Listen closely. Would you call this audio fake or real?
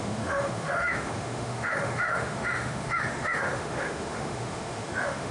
fake